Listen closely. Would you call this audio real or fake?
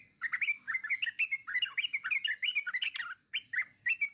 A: real